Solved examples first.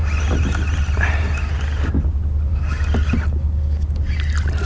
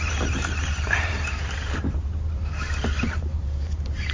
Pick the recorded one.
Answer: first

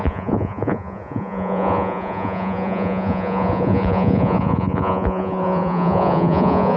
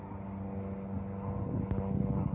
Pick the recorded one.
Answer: second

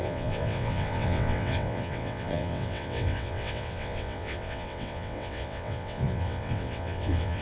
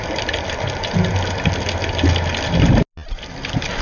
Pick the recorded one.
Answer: second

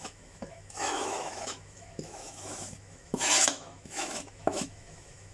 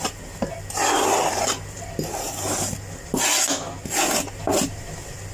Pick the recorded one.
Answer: second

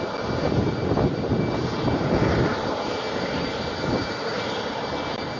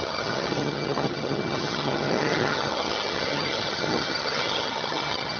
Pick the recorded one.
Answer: first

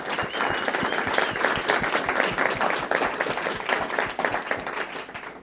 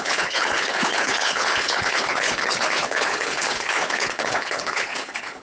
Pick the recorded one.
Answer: first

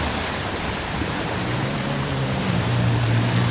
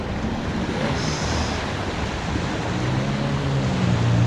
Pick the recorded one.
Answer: second